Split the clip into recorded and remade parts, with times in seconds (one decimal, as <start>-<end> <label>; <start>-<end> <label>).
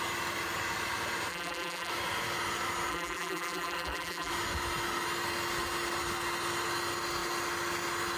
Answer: 0.0-1.3 recorded; 1.3-1.9 remade; 1.9-2.9 recorded; 2.9-4.3 remade; 4.3-8.2 recorded